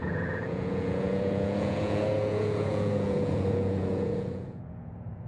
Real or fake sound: fake